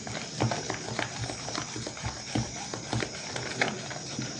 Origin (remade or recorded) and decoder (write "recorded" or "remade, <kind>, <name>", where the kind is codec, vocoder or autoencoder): recorded